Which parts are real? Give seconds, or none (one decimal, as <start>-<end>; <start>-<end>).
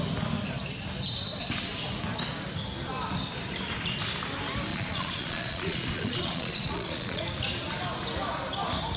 0.0-4.7; 7.2-9.0